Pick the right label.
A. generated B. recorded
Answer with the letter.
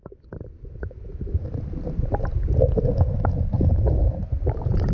B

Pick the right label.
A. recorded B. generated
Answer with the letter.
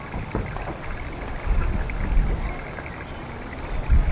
A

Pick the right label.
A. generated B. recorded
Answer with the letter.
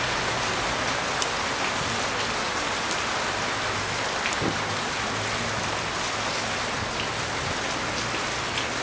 B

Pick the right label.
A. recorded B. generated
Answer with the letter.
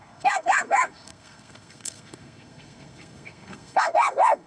B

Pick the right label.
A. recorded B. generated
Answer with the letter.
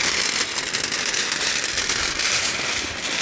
A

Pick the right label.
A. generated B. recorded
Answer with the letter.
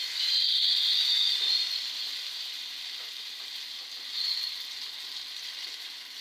B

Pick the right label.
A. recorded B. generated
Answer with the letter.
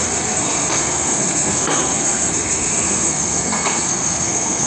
B